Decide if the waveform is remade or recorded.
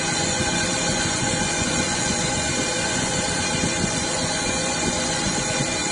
remade